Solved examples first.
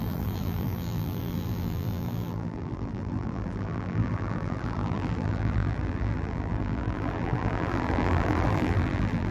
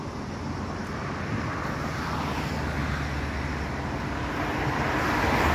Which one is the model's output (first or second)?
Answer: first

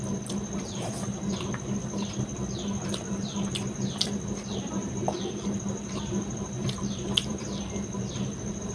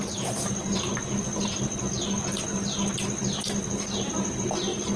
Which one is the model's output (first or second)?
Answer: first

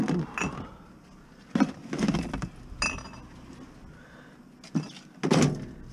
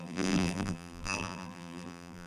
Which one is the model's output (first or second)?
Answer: second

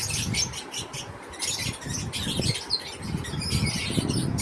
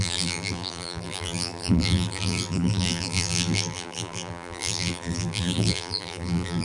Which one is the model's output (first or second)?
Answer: second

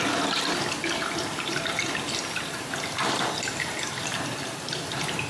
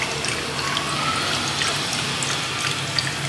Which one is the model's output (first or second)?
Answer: first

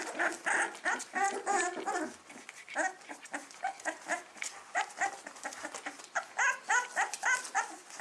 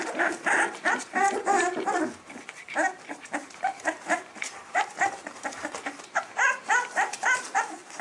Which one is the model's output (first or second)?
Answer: second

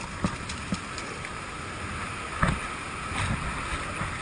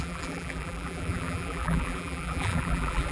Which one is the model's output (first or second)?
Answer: second